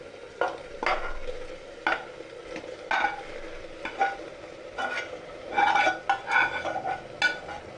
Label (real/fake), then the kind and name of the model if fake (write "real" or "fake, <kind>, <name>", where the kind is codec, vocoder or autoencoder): real